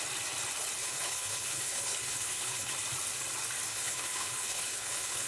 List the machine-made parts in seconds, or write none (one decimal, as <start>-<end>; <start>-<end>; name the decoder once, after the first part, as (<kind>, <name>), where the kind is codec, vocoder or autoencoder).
0.8-2.7 (codec, HILCodec); 3.7-5.3